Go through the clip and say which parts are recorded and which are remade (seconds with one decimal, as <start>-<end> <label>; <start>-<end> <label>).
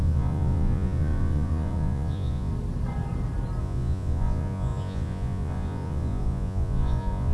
0.0-2.5 remade; 2.5-3.6 recorded; 3.6-7.3 remade